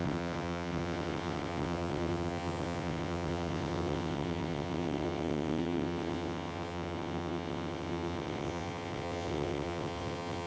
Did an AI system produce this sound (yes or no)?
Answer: yes